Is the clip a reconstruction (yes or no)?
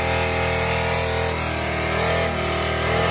no